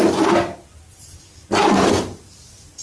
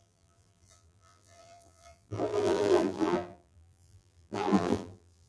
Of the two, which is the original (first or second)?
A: first